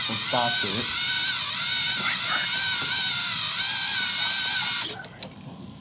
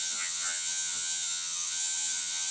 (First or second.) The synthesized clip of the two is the second